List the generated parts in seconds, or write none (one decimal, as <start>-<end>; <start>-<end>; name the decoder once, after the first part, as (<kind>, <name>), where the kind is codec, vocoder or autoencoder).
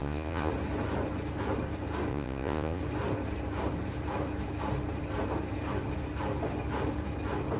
0.0-0.5 (vocoder, Vocos); 2.1-2.8